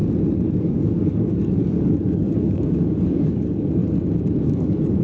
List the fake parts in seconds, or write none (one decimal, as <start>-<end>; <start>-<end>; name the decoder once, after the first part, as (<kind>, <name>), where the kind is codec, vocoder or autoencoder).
0.6-3.8 (codec, DAC); 4.4-5.0